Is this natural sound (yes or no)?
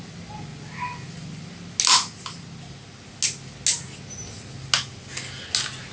yes